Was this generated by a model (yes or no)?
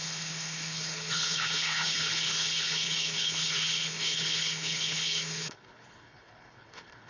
yes